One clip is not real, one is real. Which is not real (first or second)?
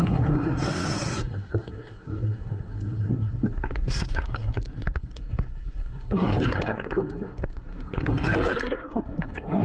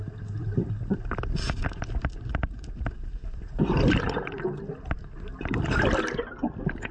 first